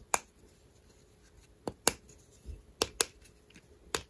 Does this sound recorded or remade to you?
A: recorded